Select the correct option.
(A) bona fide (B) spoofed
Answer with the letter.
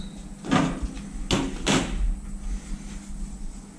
A